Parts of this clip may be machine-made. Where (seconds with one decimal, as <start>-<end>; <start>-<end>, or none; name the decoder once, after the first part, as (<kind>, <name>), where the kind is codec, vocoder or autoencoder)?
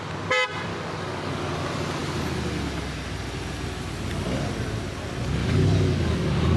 0.7-1.5 (codec, DAC); 5.4-6.6